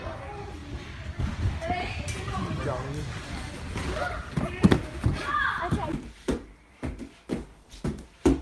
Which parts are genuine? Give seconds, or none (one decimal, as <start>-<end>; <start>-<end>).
0.0-7.3; 7.8-8.4